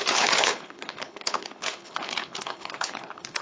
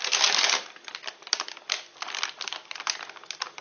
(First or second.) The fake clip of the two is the first